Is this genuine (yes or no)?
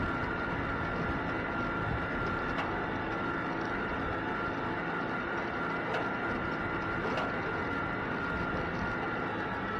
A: yes